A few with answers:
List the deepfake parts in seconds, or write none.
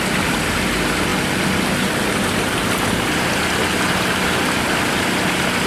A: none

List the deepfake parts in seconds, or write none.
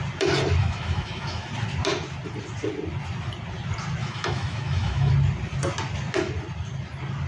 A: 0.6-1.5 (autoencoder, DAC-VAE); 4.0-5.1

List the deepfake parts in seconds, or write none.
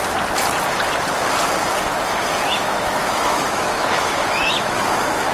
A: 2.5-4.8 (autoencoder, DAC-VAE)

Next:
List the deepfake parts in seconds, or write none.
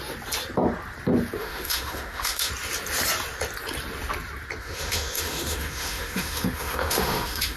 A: 1.4-2.5 (autoencoder, DAC-VAE); 4.6-7.6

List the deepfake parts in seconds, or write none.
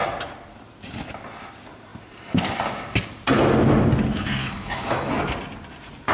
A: 4.4-5.1 (autoencoder, DAC-VAE)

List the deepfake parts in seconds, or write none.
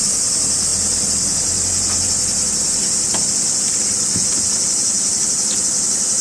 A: none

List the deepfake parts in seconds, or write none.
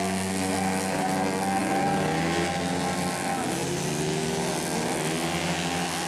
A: none